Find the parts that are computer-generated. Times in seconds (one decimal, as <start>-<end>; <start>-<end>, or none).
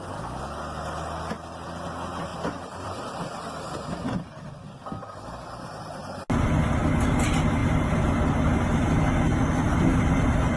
2.3-5.2; 7.6-8.3